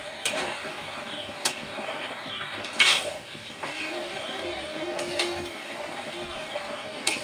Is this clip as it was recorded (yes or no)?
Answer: no